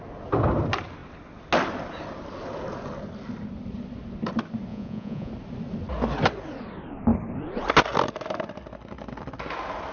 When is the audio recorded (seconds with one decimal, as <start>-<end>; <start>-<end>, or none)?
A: 0.0-4.7; 5.3-9.9